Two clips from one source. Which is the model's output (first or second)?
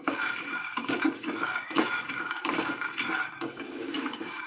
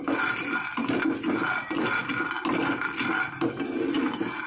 first